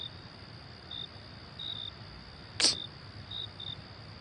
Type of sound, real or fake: real